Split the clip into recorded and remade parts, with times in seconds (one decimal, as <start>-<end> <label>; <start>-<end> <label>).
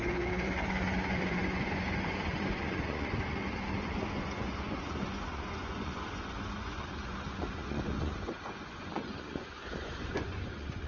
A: 0.0-10.9 remade